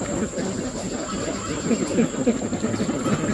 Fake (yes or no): no